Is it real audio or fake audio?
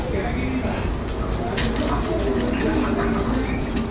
real